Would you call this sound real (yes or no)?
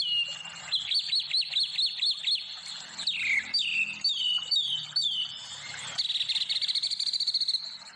yes